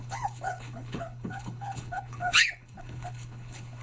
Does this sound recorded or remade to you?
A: remade